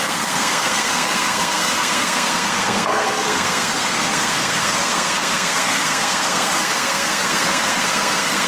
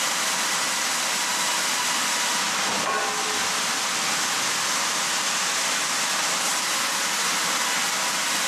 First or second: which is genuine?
second